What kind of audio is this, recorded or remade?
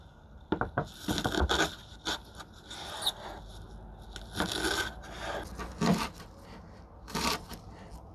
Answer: recorded